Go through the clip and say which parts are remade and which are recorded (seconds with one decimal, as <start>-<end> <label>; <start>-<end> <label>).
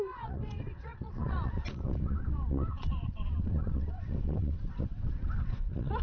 0.0-6.0 remade